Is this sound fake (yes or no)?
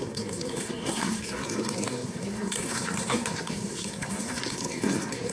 yes